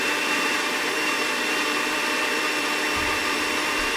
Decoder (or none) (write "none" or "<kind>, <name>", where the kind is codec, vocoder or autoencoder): vocoder, BigVGAN v2